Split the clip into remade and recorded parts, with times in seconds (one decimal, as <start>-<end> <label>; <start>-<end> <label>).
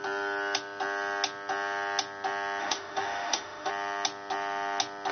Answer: 0.0-2.6 recorded; 2.6-3.7 remade; 3.7-5.1 recorded